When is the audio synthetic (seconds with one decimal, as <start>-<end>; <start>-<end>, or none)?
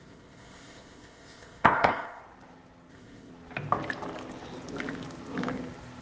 0.0-2.2; 2.9-3.3